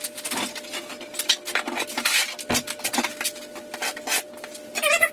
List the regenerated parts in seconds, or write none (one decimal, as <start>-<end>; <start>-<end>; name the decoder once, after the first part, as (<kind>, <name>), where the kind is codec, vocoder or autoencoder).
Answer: none